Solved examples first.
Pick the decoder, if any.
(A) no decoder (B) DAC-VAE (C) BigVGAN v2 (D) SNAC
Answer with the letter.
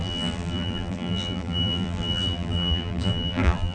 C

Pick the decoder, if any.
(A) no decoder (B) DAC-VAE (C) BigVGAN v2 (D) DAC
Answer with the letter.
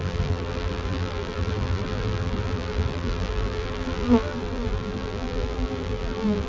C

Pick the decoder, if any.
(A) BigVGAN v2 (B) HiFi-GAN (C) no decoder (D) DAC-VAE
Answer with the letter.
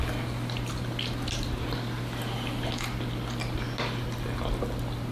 C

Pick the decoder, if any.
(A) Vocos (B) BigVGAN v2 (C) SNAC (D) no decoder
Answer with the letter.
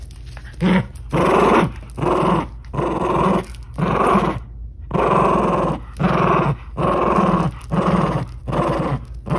D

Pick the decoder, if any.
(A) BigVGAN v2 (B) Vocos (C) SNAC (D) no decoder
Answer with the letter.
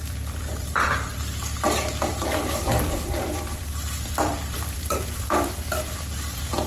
A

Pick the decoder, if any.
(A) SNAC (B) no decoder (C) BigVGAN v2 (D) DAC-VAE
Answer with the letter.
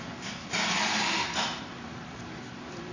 C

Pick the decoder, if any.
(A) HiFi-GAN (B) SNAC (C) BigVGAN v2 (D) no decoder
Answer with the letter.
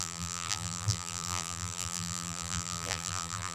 C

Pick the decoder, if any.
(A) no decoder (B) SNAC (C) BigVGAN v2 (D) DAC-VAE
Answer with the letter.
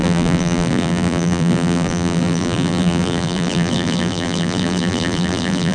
C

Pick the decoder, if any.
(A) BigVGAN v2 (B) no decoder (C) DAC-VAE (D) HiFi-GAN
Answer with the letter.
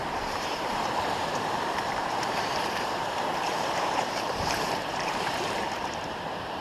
A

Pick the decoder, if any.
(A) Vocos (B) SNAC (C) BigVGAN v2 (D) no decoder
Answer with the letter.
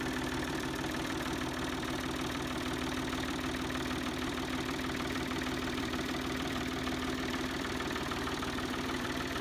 C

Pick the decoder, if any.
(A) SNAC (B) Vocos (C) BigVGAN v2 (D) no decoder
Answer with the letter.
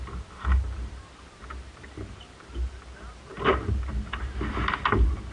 D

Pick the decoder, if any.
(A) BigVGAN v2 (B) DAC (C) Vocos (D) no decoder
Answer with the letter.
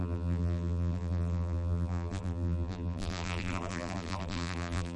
A